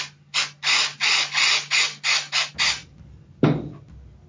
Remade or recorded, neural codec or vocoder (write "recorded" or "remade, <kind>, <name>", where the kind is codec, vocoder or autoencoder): recorded